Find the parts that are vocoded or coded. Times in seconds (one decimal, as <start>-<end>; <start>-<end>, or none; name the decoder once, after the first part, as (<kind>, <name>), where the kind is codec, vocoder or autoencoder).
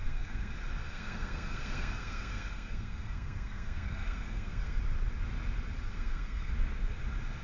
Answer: 0.0-0.5 (codec, SNAC); 0.9-4.8; 5.9-6.5